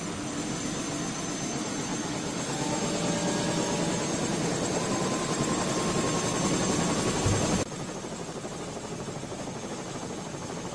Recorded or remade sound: recorded